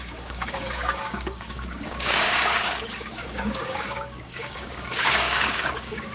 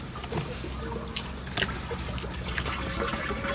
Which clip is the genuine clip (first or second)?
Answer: second